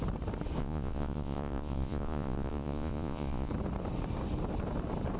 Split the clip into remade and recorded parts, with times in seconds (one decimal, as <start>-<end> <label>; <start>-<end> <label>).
0.0-0.6 recorded; 0.6-3.5 remade; 3.5-5.2 recorded